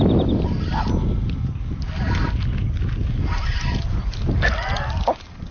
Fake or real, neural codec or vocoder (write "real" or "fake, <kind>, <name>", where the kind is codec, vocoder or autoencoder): real